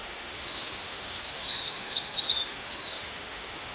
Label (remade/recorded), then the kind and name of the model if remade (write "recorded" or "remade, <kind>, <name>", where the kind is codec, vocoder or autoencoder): remade, autoencoder, DAC-VAE